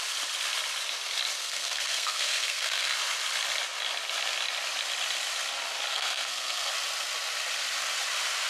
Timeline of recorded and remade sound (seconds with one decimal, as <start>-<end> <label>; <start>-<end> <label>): 0.0-1.4 recorded; 1.4-2.9 remade; 2.9-5.9 recorded; 5.9-6.7 remade; 6.7-8.5 recorded